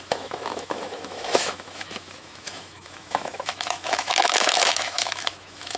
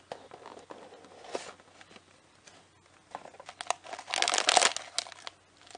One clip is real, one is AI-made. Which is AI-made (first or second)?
first